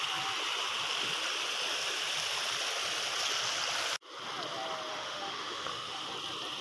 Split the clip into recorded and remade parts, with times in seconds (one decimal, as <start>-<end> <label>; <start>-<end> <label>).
0.0-4.9 recorded; 4.9-6.1 remade; 6.1-6.6 recorded